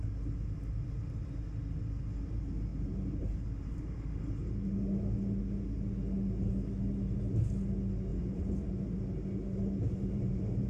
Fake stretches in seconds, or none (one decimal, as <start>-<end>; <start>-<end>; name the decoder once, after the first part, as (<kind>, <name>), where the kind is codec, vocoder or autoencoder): 2.7-4.1 (vocoder, BigVGAN v2); 8.1-8.7; 9.8-10.7